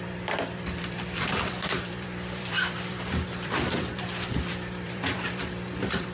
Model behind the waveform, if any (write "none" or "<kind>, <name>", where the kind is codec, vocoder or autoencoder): vocoder, BigVGAN v2